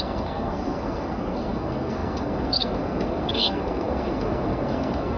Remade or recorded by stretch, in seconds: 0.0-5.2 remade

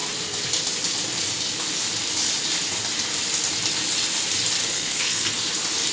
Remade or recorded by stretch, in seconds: 0.0-4.6 recorded; 4.6-5.3 remade; 5.3-5.9 recorded

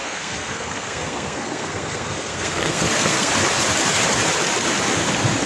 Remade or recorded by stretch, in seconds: 0.0-3.3 remade; 3.3-5.5 recorded

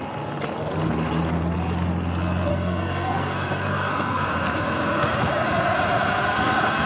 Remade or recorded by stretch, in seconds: 0.0-2.5 recorded; 2.5-4.3 remade; 4.3-6.9 recorded